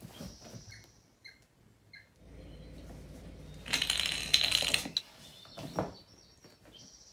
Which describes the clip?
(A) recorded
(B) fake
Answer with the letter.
A